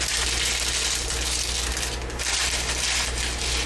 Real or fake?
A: real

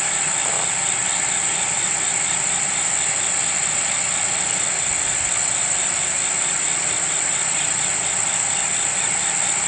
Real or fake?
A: real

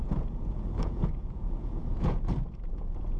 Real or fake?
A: fake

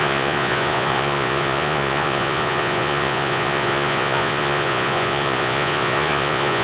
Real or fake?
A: fake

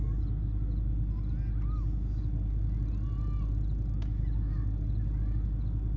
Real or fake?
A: real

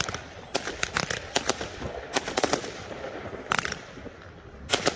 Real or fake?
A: real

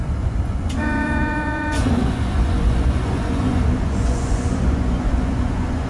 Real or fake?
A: fake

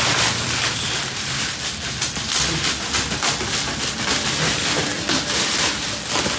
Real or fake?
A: real